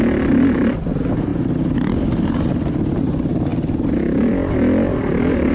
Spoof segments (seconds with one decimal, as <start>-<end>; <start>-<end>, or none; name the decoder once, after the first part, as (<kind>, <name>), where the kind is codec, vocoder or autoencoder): none